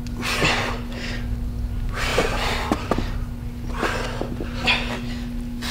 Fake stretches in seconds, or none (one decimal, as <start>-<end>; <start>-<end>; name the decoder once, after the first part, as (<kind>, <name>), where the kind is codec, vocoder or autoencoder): none